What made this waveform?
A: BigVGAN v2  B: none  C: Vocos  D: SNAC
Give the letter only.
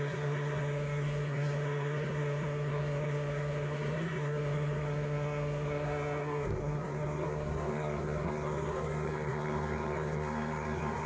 D